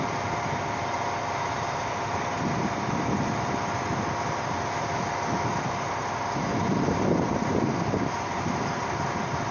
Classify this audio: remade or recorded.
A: recorded